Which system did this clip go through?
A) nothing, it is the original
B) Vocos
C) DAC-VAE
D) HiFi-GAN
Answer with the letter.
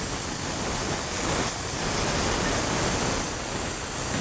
A